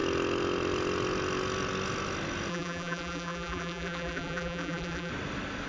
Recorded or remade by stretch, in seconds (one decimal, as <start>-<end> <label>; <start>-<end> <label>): 0.0-2.5 recorded; 2.5-5.1 remade; 5.1-5.7 recorded